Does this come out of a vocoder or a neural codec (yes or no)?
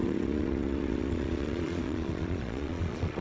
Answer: yes